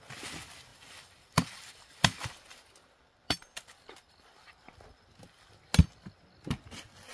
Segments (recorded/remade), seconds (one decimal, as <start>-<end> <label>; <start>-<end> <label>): 0.0-0.7 recorded; 0.7-5.0 remade; 5.0-7.1 recorded